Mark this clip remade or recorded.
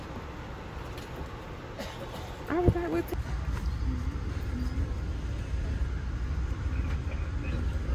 recorded